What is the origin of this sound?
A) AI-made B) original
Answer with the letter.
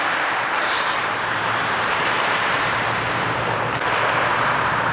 A